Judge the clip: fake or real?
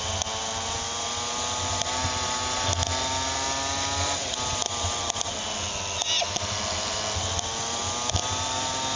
real